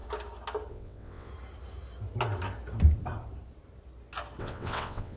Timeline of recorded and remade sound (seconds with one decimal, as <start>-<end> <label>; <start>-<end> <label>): 0.0-0.7 recorded; 0.7-1.3 remade; 1.3-4.4 recorded; 4.4-5.2 remade